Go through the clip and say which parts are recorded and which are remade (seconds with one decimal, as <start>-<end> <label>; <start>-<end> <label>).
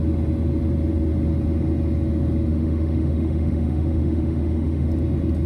0.0-2.5 recorded; 2.5-4.9 remade; 4.9-5.5 recorded